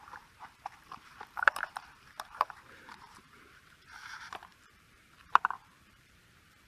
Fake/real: fake